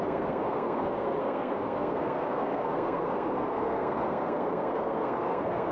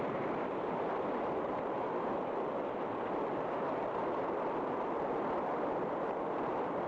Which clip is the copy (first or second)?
first